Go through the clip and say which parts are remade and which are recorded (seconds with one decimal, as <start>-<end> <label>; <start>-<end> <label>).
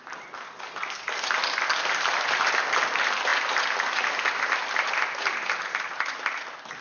0.0-6.8 recorded